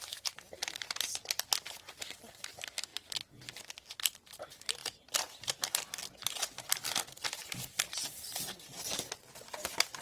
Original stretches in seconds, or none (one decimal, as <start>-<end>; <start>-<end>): 0.0-4.8; 5.9-7.4; 8.1-10.0